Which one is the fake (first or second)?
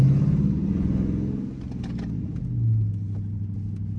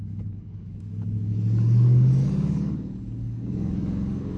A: second